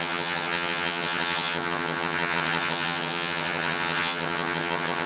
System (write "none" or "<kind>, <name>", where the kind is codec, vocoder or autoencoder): vocoder, HiFi-GAN